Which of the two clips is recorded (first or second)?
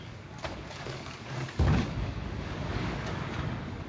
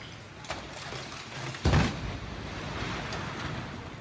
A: second